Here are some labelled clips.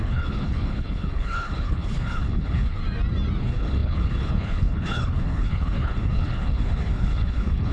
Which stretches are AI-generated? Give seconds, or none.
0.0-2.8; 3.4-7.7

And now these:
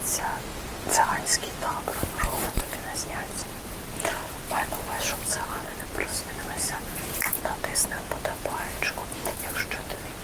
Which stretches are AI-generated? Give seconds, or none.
1.3-2.2; 6.1-7.2

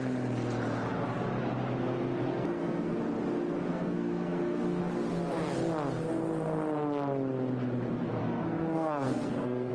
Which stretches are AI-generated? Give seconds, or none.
2.3-2.9; 3.7-4.8; 8.2-9.7

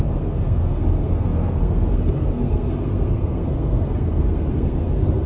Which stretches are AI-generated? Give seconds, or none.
0.0-5.3

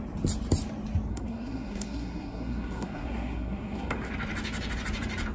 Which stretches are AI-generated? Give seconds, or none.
1.1-4.1